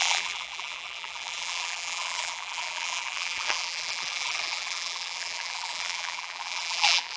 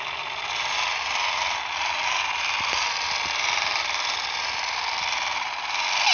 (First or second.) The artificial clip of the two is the first